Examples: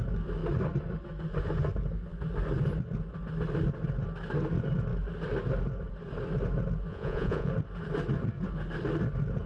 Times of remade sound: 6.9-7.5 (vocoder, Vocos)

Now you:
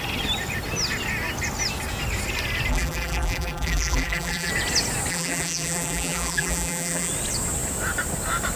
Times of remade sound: 2.7-4.5 (vocoder, BigVGAN v2); 5.1-7.1

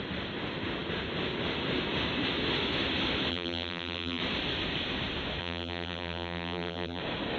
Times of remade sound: 3.3-4.2 (vocoder, BigVGAN v2); 5.4-7.0

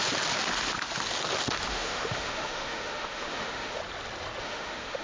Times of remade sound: 1.7-3.8 (autoencoder, DAC-VAE); 4.4-5.0

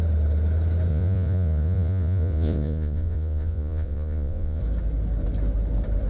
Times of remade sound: 0.9-4.6 (vocoder, Vocos)

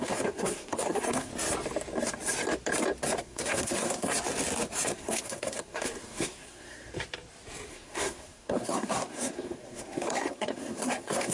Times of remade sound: 0.0-1.3 (codec, SNAC); 3.2-4.1; 4.9-6.9; 7.7-11.3

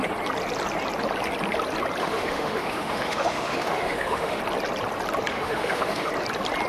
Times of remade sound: 2.0-4.4 (autoencoder, DAC-VAE); 5.3-6.1